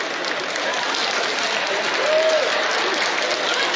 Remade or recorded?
recorded